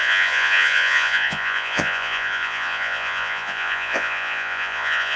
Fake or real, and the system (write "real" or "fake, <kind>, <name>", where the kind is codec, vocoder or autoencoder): fake, vocoder, Vocos